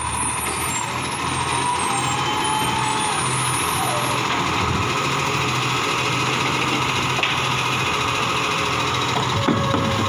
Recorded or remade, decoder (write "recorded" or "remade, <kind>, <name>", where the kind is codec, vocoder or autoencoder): recorded